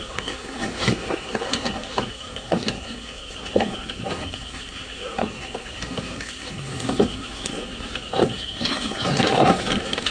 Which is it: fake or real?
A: fake